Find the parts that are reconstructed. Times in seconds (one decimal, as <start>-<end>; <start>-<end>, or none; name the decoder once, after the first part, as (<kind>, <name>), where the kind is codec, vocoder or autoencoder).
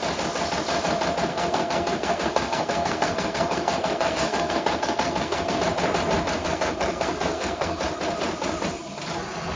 1.3-5.6 (codec, SNAC); 6.4-7.8